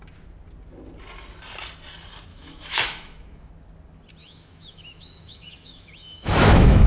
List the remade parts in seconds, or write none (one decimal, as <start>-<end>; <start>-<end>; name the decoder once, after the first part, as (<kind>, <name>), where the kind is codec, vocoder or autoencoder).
2.3-3.5 (autoencoder, DAC-VAE); 4.2-6.9